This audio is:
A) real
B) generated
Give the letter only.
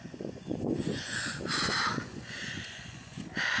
B